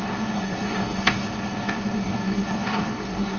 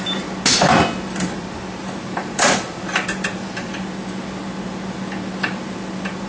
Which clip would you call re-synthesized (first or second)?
first